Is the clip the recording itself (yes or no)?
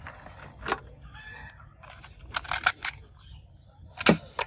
yes